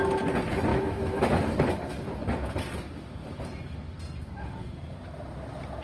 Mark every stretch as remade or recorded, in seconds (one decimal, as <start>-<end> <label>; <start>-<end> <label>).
0.0-0.7 recorded; 0.7-1.3 remade; 1.3-5.8 recorded